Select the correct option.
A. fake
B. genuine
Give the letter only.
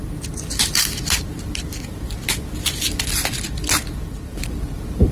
B